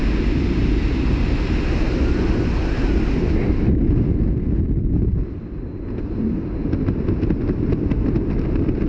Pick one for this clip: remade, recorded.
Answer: recorded